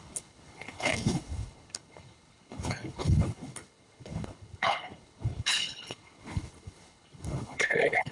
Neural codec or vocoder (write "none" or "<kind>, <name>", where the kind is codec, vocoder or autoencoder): codec, HILCodec